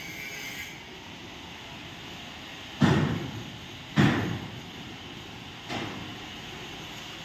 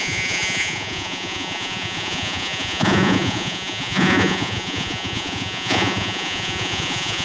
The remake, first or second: second